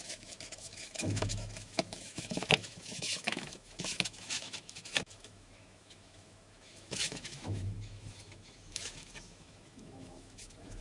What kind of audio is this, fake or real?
fake